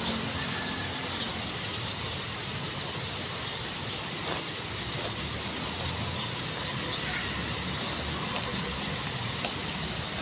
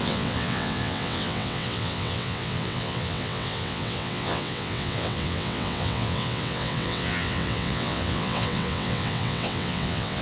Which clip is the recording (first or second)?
first